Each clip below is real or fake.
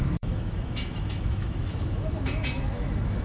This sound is fake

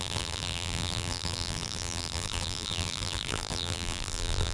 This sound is fake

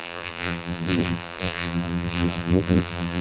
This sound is fake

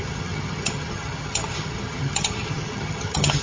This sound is fake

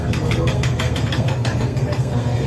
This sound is fake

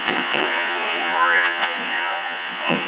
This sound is fake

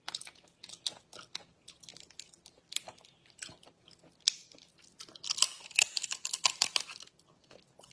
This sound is real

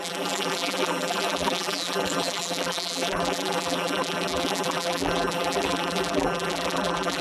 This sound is fake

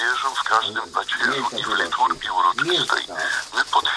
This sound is real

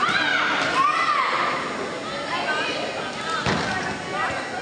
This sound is real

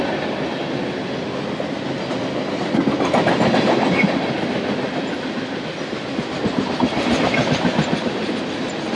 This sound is real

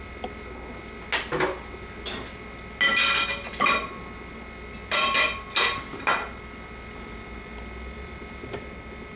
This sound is real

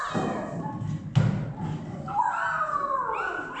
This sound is real